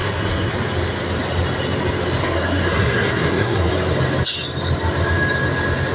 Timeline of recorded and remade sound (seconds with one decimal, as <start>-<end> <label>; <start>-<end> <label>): 0.0-0.5 remade; 0.5-2.2 recorded; 2.2-3.7 remade; 3.7-5.9 recorded